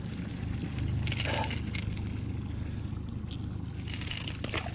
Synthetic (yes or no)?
no